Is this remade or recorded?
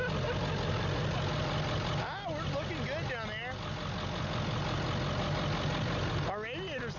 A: recorded